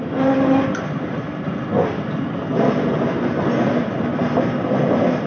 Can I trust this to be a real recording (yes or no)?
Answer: yes